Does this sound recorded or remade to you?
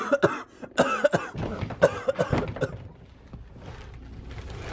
recorded